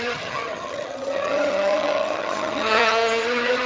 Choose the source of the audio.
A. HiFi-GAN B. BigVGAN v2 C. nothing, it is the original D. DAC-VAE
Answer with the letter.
A